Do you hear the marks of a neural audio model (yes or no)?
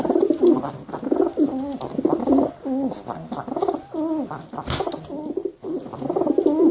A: no